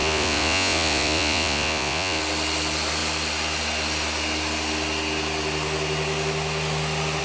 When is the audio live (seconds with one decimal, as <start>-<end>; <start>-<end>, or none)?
2.2-7.2